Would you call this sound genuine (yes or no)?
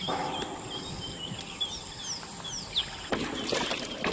yes